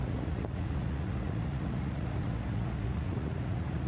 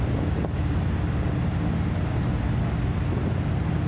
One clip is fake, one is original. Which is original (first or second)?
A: second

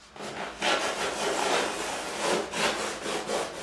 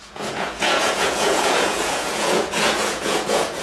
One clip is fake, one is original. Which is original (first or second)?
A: first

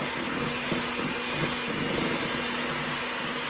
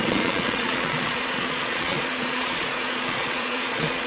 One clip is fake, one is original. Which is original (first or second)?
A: first